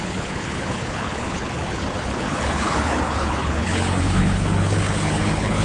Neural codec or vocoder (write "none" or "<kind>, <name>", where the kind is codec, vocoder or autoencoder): codec, HILCodec